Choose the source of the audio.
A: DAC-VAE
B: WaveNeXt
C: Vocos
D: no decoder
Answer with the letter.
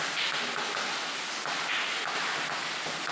D